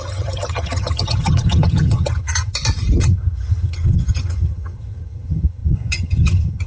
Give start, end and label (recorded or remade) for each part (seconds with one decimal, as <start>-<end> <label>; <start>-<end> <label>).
0.0-2.5 remade; 2.5-3.0 recorded; 3.0-6.7 remade